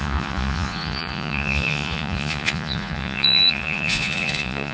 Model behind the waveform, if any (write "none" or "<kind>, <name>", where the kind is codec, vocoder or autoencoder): vocoder, Vocos